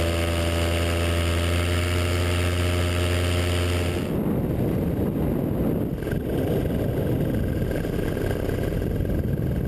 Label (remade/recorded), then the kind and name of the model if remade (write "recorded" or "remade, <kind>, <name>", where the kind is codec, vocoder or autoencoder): recorded